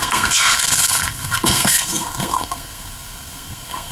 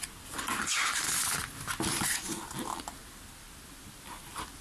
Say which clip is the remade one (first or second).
first